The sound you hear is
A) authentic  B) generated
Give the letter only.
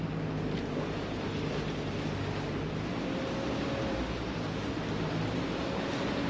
A